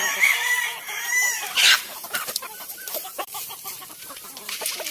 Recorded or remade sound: remade